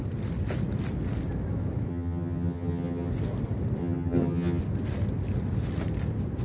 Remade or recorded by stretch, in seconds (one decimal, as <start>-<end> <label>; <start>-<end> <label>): 0.0-1.9 recorded; 1.9-3.1 remade; 3.1-3.8 recorded; 3.8-4.6 remade; 4.6-6.4 recorded

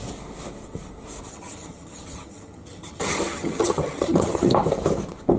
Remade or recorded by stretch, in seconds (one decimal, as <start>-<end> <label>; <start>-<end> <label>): 0.0-1.3 recorded; 1.3-4.5 remade; 4.5-5.4 recorded

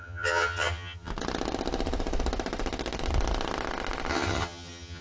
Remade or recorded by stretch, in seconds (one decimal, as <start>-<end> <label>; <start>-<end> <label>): 0.0-1.1 remade; 1.1-4.1 recorded; 4.1-5.0 remade

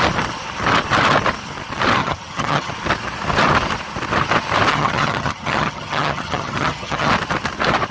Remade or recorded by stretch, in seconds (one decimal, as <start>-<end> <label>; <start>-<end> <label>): 0.0-2.0 recorded; 2.0-2.7 remade; 2.7-4.7 recorded; 4.7-7.1 remade; 7.1-7.9 recorded